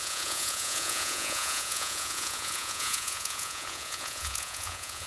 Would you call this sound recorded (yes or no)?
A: no